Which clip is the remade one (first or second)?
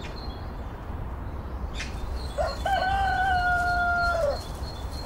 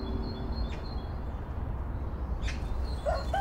first